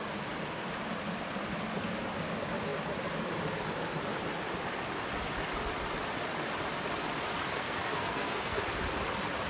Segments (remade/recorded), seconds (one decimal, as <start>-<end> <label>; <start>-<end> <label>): 0.0-7.4 recorded; 7.4-8.6 remade; 8.6-9.5 recorded